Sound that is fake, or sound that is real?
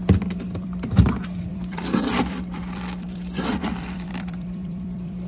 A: fake